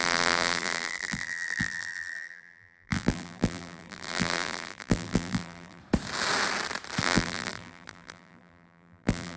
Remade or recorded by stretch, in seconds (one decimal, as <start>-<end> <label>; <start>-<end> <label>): 0.0-5.8 remade; 5.8-7.0 recorded; 7.0-9.4 remade